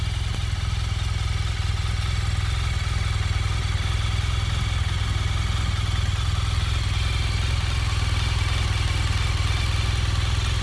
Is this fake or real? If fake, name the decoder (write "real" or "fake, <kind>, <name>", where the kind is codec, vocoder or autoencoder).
real